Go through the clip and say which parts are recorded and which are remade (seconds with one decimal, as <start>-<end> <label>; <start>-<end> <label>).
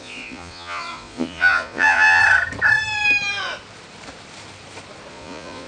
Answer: 0.0-2.2 remade; 2.2-5.1 recorded; 5.1-5.7 remade